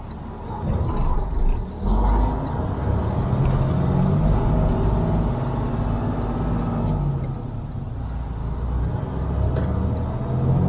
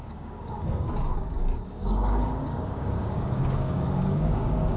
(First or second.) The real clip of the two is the first